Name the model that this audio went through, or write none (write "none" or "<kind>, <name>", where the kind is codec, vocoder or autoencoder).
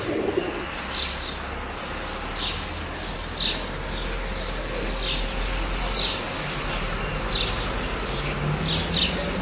none